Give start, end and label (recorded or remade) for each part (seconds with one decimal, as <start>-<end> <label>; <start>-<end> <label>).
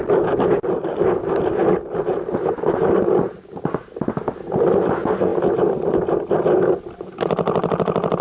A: 0.0-8.2 recorded